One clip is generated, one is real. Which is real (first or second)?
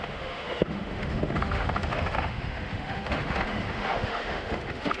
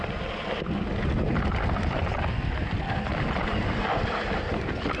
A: second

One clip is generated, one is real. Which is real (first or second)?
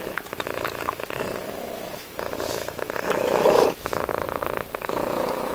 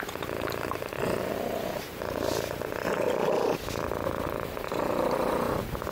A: second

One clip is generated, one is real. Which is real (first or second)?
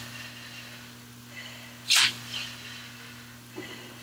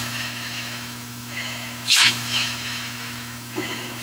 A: first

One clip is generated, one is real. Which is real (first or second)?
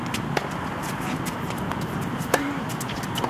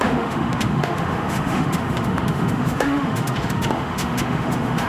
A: first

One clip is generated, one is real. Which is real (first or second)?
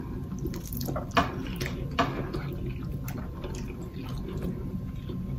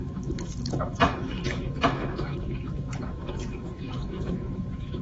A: first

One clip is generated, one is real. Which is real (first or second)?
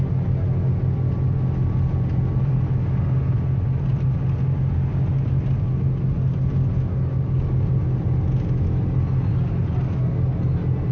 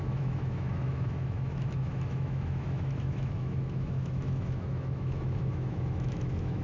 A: first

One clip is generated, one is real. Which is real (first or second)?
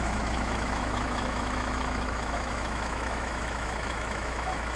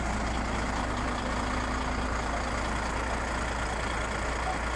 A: second